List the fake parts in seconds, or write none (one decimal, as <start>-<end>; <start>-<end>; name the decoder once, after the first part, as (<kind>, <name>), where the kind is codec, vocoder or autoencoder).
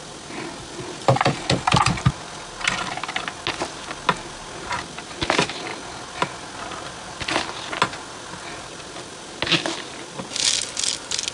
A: none